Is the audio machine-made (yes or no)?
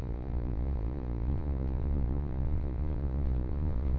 yes